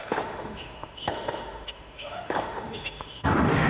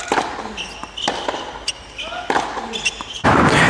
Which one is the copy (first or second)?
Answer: first